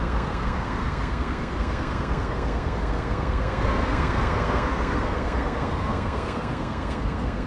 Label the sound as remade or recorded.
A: remade